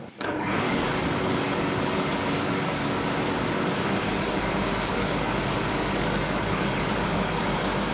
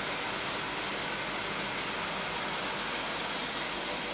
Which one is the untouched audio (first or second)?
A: second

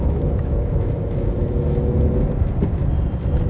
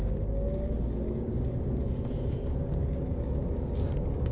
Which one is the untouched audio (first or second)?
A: first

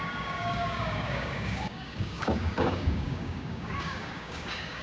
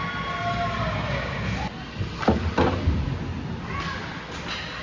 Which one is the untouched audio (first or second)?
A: second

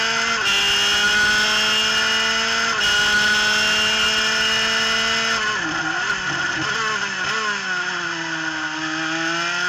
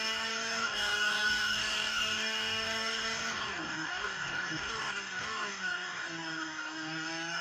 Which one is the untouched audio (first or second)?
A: first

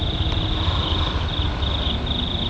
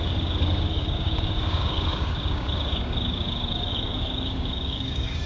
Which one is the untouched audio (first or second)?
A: first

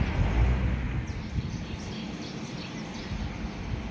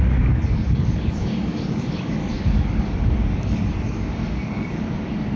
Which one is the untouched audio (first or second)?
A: first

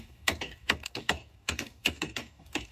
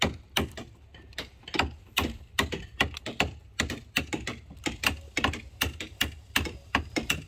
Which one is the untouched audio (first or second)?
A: second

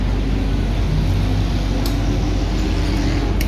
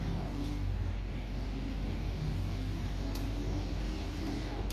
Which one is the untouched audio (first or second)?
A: first